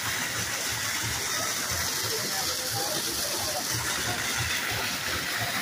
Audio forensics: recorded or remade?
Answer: recorded